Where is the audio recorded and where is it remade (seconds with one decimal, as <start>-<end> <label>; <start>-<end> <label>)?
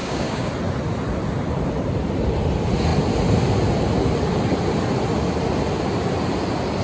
0.0-0.5 remade; 0.5-6.8 recorded